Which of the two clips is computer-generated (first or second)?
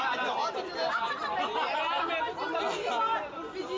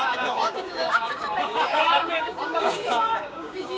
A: second